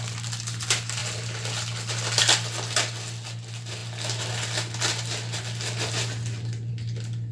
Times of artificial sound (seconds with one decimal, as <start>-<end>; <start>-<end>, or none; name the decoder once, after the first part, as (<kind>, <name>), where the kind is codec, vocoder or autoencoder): none